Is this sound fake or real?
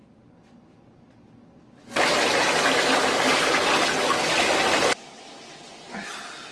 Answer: real